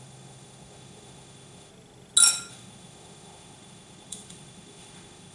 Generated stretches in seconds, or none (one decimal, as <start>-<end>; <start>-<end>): 0.0-1.7; 2.5-5.3